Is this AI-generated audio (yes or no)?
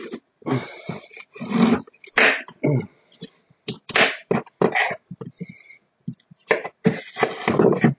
no